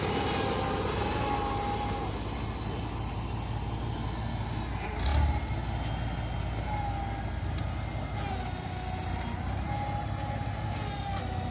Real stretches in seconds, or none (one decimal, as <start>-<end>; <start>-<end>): 0.0-11.5